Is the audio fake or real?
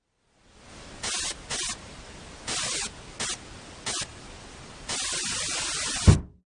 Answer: real